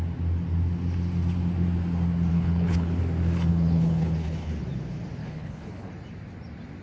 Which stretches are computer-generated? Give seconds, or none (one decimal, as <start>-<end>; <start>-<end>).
2.3-3.0; 3.5-4.5; 5.2-5.9